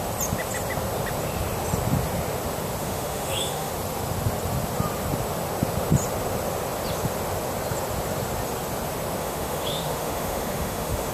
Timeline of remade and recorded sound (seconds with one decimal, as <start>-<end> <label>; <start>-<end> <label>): 0.0-2.8 recorded; 2.8-3.7 remade; 3.7-9.2 recorded; 9.2-11.1 remade